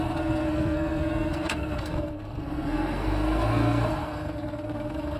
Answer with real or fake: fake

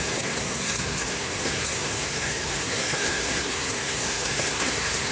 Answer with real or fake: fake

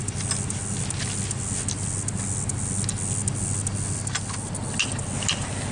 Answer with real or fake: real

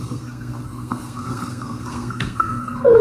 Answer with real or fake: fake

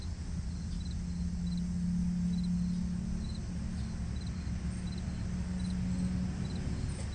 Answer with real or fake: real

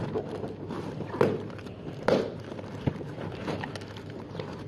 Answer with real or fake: real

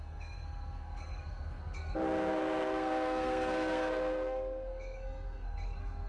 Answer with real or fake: fake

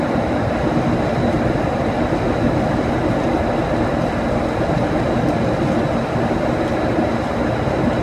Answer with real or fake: real